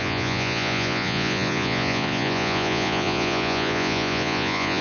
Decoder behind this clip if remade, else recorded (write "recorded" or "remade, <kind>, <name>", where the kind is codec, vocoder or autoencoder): remade, vocoder, Vocos